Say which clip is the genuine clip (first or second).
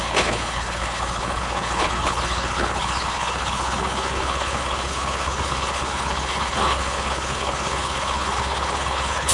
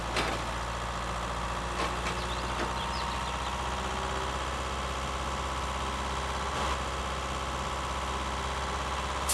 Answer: second